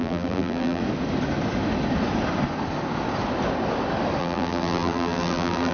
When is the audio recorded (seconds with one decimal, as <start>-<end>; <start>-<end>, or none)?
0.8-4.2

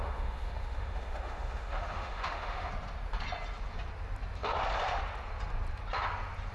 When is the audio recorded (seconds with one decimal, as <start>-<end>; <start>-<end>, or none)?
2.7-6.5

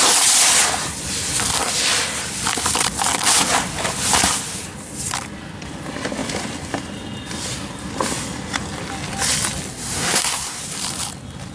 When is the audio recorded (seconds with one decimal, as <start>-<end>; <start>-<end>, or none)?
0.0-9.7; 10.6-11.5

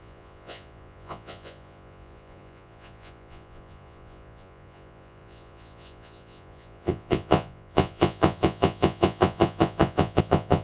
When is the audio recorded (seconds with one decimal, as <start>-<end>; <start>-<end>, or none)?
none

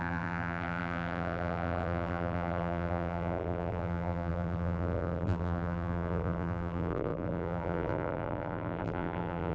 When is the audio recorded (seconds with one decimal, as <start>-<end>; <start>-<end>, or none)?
none